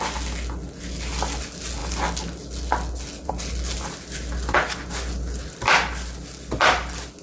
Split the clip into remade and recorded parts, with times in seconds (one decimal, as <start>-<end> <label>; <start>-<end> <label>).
0.0-7.2 recorded